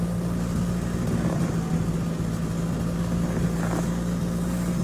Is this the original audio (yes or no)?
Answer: yes